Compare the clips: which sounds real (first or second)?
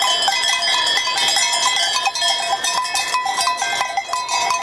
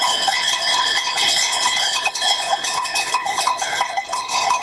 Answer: first